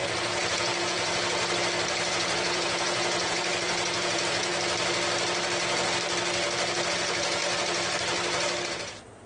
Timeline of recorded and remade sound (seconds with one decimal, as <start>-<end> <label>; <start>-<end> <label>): 0.0-1.4 remade; 1.4-2.1 recorded; 2.1-4.5 remade; 4.5-6.9 recorded; 6.9-7.4 remade; 7.4-8.7 recorded; 8.7-9.3 remade